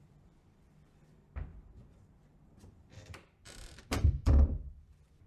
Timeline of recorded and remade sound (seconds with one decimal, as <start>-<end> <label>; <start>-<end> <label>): 0.0-5.3 remade